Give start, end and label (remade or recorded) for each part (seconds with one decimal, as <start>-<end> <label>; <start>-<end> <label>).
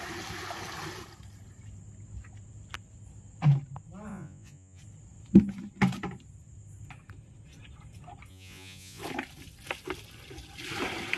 0.0-4.1 recorded; 4.1-4.8 remade; 4.8-8.3 recorded; 8.3-9.0 remade; 9.0-11.2 recorded